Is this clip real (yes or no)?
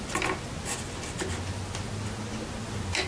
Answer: yes